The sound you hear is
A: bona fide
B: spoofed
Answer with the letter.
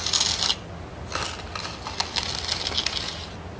A